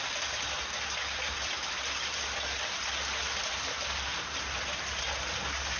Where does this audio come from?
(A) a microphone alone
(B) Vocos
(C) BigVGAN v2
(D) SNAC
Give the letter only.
A